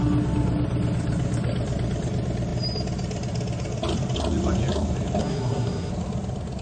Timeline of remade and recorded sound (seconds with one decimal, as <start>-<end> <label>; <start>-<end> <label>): 0.0-5.2 recorded; 5.2-5.9 remade; 5.9-6.6 recorded